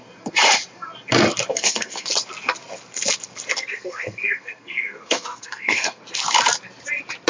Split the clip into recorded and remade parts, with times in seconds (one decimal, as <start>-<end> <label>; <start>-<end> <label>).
0.0-1.5 recorded; 1.5-2.1 remade; 2.1-3.5 recorded; 3.5-6.0 remade; 6.0-7.3 recorded